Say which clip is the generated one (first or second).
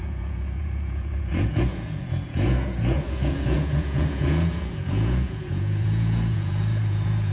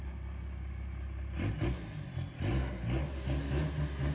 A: first